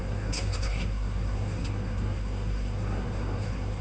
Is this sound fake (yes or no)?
yes